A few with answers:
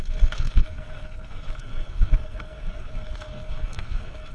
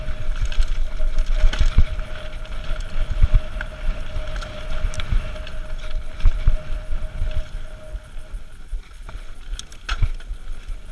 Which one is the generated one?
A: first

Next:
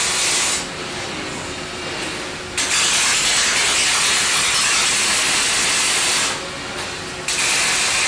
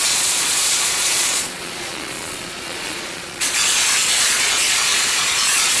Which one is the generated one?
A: second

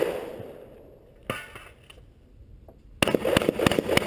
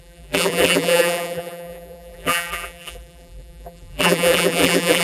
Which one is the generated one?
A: second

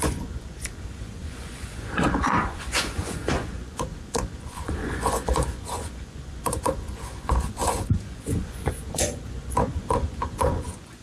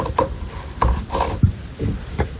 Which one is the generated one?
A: first